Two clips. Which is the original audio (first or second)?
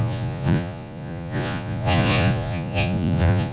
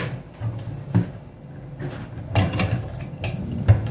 second